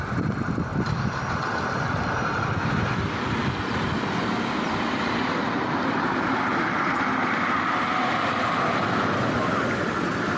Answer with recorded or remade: remade